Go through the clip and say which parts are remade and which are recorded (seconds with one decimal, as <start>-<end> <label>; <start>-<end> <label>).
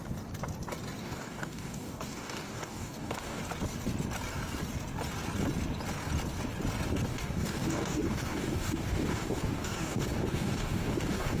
0.0-1.0 recorded; 1.0-3.4 remade; 3.4-7.1 recorded; 7.1-11.4 remade